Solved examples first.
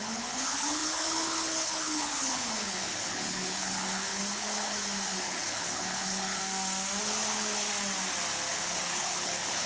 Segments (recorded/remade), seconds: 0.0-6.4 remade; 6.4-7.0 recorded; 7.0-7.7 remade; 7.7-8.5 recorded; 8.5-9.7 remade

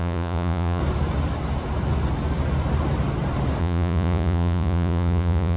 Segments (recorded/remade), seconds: 0.0-0.8 remade; 0.8-3.6 recorded; 3.6-5.6 remade

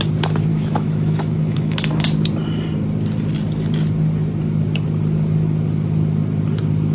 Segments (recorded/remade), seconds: 0.0-0.5 recorded; 0.5-1.9 remade; 1.9-6.9 recorded